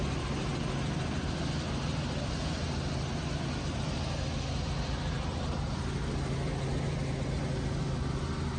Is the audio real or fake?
real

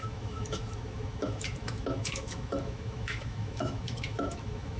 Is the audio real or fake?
fake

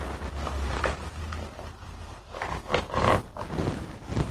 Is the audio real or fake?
real